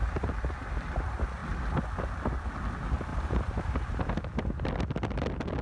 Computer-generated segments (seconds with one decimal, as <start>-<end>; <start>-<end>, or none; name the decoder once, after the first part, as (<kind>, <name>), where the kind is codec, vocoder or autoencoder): 3.1-4.0 (vocoder, BigVGAN v2)